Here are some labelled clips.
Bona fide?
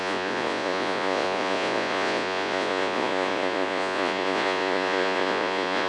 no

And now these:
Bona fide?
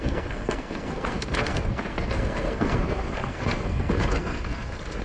no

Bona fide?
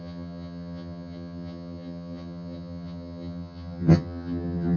no